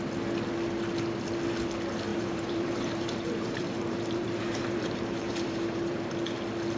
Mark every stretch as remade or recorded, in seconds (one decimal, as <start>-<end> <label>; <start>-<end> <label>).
0.0-2.1 recorded; 2.1-6.0 remade; 6.0-6.8 recorded